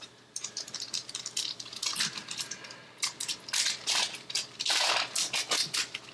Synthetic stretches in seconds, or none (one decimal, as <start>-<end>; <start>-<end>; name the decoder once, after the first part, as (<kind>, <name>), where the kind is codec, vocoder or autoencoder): none